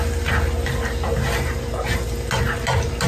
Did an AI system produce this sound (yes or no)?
no